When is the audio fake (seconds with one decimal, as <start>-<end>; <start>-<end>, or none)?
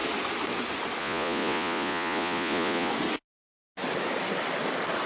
1.0-2.9